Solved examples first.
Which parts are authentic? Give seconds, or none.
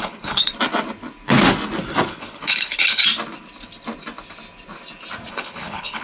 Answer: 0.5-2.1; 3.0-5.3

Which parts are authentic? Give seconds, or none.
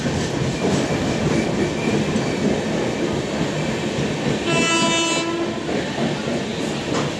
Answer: 0.0-7.2